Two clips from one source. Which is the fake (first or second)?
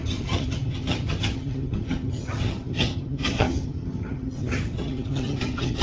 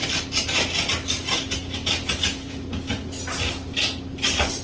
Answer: first